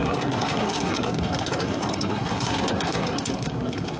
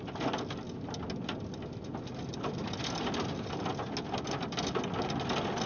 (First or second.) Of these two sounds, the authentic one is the second